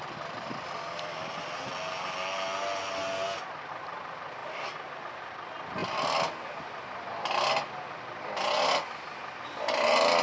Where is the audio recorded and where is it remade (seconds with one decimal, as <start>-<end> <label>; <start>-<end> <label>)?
0.0-10.2 recorded